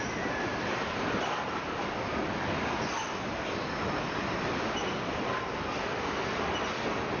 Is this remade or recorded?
recorded